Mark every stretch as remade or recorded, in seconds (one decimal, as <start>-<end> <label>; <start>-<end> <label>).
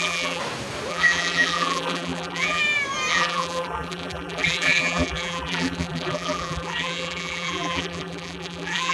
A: 0.0-0.4 remade; 0.4-0.9 recorded; 0.9-2.6 remade; 2.6-3.1 recorded; 3.1-8.9 remade